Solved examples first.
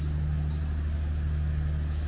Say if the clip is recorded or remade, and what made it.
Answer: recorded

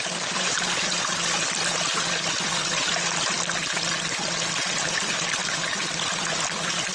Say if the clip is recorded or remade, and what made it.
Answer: recorded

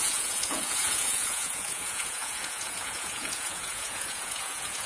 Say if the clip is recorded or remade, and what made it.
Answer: remade, vocoder, Vocos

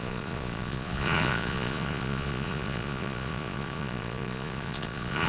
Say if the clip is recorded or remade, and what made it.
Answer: remade, vocoder, Vocos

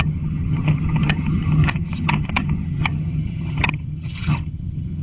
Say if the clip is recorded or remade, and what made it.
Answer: remade, vocoder, HiFi-GAN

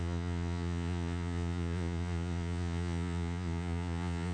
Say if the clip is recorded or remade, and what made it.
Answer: remade, vocoder, Vocos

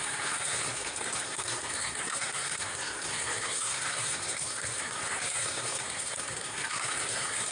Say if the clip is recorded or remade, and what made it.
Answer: remade, codec, SNAC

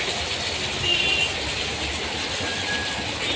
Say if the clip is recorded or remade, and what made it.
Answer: recorded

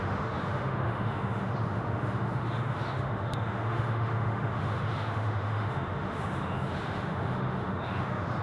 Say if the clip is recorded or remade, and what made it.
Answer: remade, autoencoder, DAC-VAE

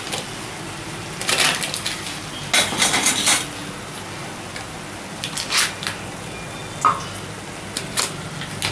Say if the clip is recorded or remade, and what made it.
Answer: recorded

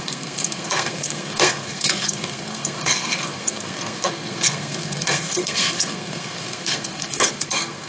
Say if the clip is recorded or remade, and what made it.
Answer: remade, codec, SNAC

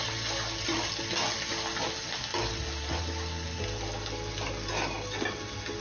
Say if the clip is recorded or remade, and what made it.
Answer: recorded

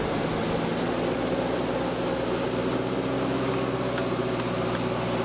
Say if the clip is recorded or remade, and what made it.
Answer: recorded